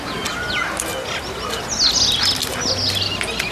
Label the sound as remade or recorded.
recorded